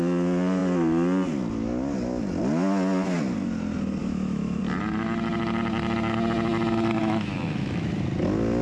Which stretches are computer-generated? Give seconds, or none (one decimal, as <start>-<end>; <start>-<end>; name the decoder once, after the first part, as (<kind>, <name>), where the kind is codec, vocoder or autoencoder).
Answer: 4.0-4.6 (autoencoder, DAC-VAE); 7.0-7.9